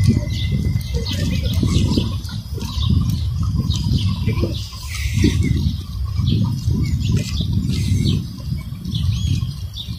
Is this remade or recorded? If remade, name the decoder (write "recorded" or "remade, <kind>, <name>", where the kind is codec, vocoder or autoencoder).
recorded